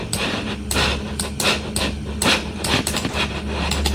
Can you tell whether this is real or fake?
real